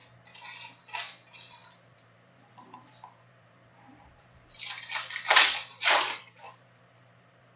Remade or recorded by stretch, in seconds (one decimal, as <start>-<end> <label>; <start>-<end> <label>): 0.0-0.8 recorded; 0.8-7.6 remade